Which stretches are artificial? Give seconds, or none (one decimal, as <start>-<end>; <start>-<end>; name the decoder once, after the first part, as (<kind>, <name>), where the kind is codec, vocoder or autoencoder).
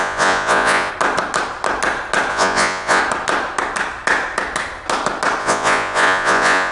0.0-0.9 (vocoder, Vocos); 2.3-3.0; 5.4-6.7